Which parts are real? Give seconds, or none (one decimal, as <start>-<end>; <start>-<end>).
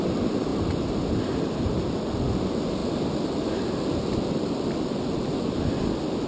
0.0-6.3